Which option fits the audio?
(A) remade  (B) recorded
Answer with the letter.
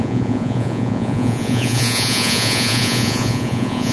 A